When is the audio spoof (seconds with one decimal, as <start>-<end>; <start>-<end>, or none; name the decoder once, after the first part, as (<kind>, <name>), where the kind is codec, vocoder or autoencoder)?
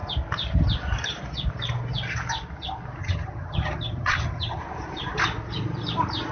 3.0-4.6 (vocoder, HiFi-GAN)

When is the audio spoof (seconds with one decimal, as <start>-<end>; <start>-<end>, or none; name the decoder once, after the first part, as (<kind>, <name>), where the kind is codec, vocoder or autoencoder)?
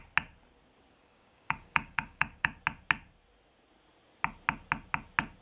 1.0-2.6 (codec, DAC)